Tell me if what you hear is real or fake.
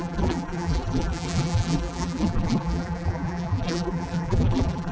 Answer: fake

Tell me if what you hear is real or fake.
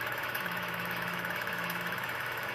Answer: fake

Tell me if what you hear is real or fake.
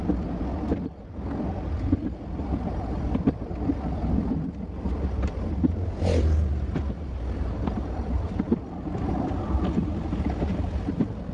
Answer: fake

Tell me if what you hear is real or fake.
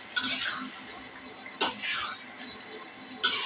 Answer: real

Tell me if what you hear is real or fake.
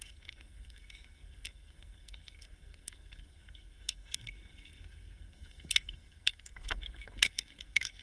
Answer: fake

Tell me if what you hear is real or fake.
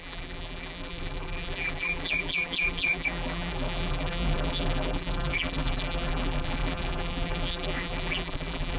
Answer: fake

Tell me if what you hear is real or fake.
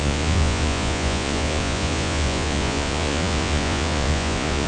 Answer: fake